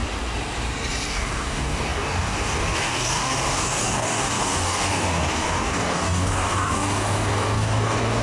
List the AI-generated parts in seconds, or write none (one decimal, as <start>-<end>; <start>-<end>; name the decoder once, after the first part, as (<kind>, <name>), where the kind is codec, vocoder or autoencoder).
1.1-8.2 (codec, DAC)